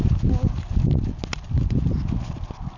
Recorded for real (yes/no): yes